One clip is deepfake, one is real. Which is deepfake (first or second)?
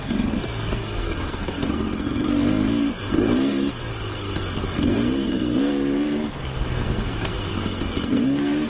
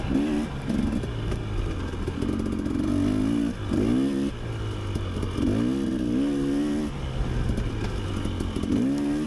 first